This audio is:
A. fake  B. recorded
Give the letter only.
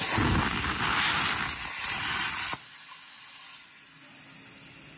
B